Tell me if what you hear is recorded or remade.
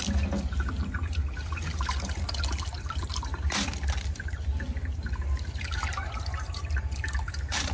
recorded